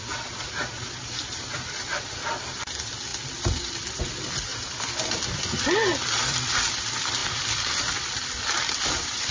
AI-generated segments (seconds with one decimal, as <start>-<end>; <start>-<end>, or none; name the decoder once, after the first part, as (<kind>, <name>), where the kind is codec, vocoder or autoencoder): 0.0-3.1 (vocoder, BigVGAN v2); 3.7-4.5; 6.6-9.3